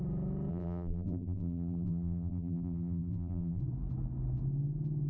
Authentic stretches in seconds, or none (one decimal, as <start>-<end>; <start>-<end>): 0.0-0.5; 3.6-5.1